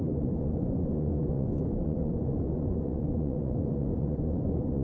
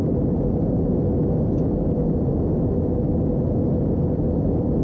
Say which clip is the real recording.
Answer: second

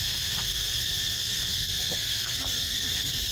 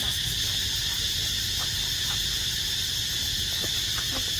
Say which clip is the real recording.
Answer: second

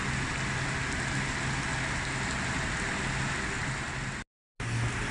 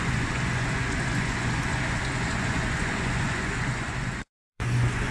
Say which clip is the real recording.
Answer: first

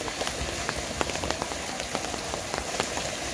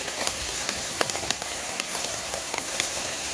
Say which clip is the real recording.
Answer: first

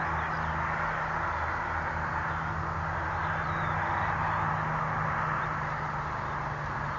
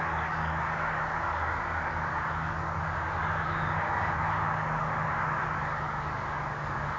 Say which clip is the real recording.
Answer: first